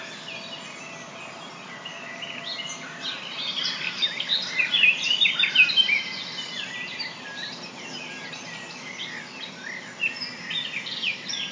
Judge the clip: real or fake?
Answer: real